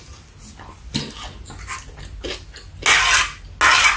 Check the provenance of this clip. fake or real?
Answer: real